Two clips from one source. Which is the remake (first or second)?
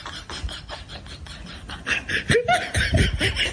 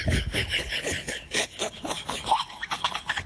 second